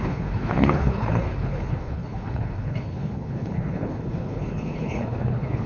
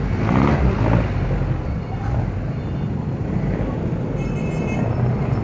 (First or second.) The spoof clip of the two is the first